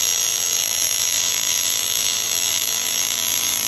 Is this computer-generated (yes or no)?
yes